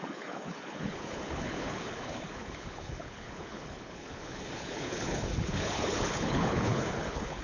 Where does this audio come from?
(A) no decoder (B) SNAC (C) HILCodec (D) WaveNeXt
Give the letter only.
C